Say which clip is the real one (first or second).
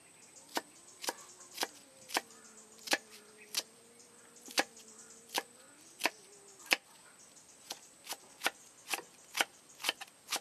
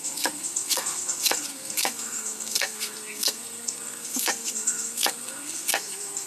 first